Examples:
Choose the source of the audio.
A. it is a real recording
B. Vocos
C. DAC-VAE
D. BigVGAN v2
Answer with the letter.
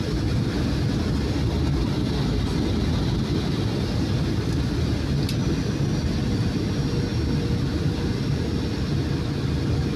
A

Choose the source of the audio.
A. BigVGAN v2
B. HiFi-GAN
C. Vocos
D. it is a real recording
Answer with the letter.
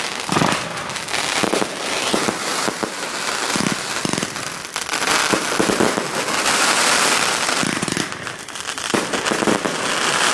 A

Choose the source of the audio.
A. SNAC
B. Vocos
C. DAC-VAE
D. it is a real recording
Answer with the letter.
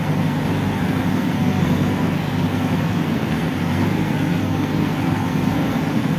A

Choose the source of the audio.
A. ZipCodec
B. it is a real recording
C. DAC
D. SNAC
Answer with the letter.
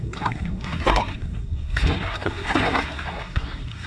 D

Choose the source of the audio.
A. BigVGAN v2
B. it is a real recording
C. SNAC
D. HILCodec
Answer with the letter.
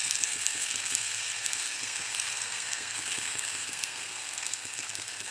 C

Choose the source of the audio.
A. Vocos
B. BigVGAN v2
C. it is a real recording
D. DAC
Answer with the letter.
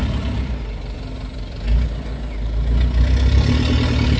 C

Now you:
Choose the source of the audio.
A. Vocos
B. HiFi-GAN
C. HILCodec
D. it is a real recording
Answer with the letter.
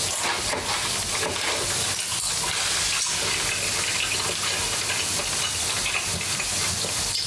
D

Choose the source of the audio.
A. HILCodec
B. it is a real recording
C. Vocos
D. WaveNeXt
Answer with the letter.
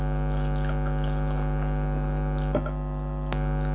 B